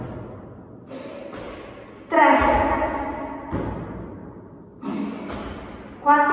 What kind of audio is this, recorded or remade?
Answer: recorded